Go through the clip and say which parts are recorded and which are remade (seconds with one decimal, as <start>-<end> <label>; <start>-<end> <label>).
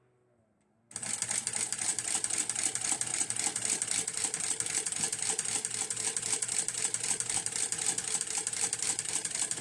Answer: 0.0-9.6 recorded